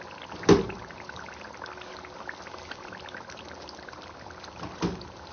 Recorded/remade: recorded